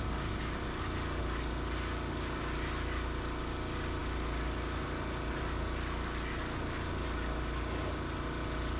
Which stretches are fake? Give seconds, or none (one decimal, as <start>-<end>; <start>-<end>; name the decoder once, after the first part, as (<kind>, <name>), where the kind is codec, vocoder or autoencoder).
none